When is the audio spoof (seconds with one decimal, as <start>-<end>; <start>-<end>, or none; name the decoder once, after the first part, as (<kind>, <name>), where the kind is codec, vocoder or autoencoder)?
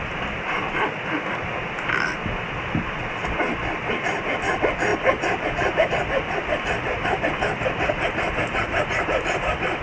none